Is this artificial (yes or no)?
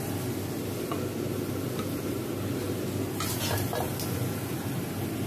no